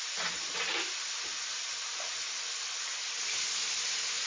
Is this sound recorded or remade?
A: recorded